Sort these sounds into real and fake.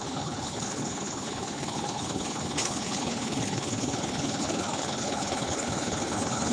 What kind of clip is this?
fake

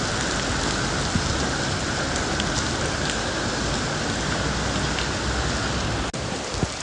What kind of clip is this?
real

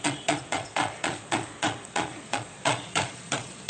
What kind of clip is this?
fake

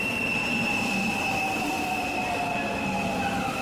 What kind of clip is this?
real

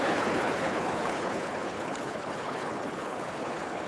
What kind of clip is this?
fake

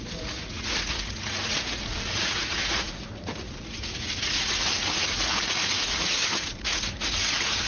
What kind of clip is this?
fake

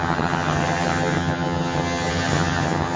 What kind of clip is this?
fake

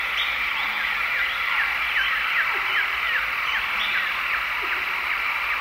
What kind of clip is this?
real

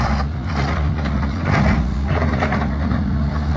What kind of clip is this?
fake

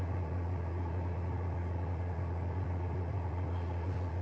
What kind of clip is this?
fake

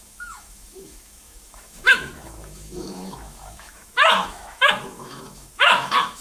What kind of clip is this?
fake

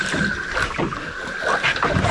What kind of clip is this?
real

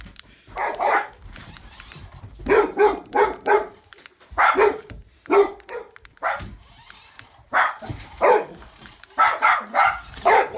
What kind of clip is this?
fake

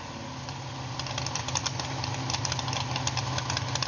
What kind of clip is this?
real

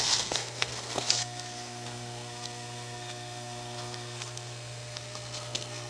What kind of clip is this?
fake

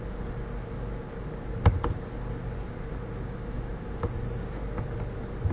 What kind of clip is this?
real